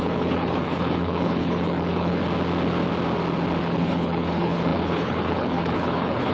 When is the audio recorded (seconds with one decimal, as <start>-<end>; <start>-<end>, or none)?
2.2-3.6